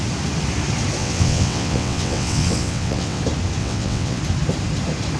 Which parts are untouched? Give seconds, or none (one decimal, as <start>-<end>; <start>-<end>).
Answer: 0.0-1.0; 3.2-3.6; 4.2-5.2